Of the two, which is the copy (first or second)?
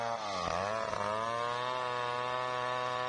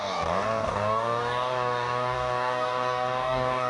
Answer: second